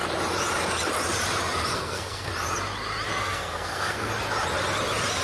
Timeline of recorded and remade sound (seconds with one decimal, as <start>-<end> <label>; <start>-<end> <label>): 0.0-1.7 recorded; 1.7-2.3 remade; 2.3-3.2 recorded; 3.2-4.1 remade; 4.1-5.2 recorded